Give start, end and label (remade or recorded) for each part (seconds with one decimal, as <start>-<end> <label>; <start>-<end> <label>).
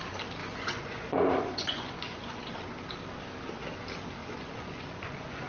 0.0-0.4 recorded; 0.4-2.5 remade; 2.5-4.2 recorded; 4.2-5.5 remade